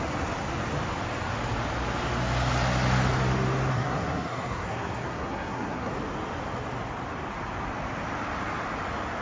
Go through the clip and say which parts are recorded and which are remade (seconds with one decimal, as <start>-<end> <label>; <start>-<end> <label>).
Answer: 0.0-3.7 recorded; 3.7-5.9 remade; 5.9-9.2 recorded